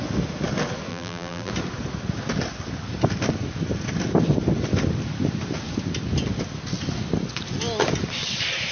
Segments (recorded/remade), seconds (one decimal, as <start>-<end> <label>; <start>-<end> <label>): 0.0-0.9 recorded; 0.9-1.5 remade; 1.5-8.7 recorded